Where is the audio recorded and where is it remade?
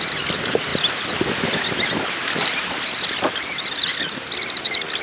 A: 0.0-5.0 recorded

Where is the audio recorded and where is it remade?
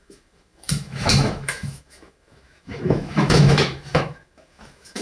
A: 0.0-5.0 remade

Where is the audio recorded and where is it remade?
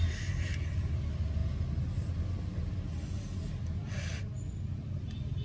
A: 0.0-5.4 recorded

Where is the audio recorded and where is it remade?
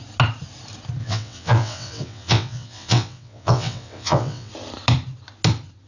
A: 0.0-1.0 recorded; 1.0-4.5 remade; 4.5-5.9 recorded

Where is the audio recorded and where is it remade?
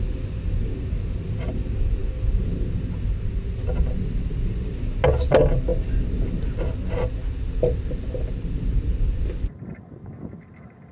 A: 0.0-10.9 recorded